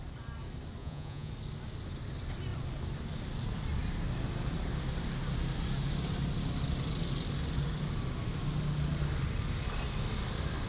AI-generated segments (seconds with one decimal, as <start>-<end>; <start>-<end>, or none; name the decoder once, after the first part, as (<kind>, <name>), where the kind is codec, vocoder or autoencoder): 0.8-1.3 (vocoder, Vocos)